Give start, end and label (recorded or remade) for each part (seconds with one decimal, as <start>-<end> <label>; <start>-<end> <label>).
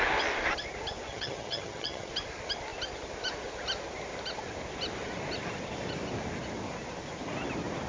0.0-1.1 recorded; 1.1-2.1 remade; 2.1-7.9 recorded